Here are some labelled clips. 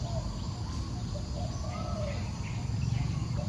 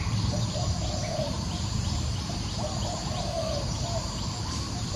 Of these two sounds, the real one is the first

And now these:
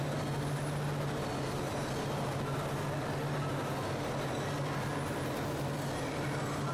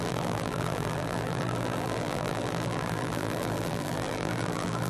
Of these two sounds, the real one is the first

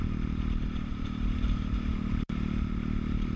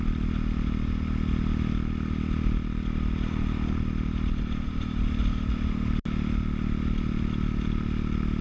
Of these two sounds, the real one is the second